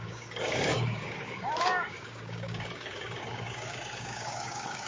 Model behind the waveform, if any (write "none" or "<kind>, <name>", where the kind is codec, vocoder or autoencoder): codec, DAC